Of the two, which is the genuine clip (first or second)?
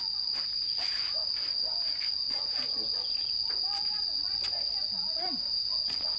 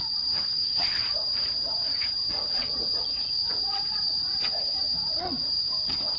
first